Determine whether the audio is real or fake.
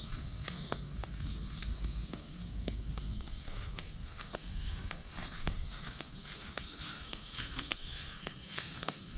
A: fake